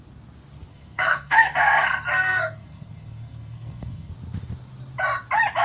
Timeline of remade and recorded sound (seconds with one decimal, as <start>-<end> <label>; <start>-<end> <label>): 0.0-0.7 recorded; 0.7-4.1 remade; 4.1-5.6 recorded